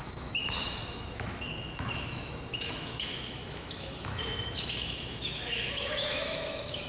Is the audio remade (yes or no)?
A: yes